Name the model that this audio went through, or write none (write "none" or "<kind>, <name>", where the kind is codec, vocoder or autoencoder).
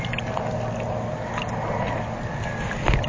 none